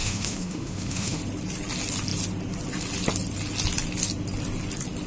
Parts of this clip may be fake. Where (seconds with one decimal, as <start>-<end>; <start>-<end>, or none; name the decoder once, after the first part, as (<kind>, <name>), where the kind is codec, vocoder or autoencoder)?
0.0-1.2 (autoencoder, DAC-VAE)